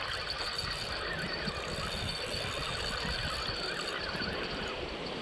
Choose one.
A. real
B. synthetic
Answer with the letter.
A